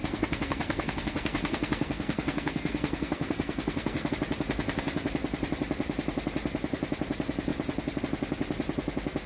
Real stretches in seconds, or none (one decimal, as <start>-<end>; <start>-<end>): 4.1-9.3